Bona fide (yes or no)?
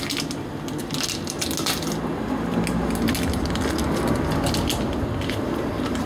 yes